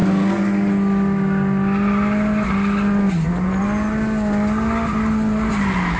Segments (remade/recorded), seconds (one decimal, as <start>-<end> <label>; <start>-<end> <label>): 0.0-6.0 recorded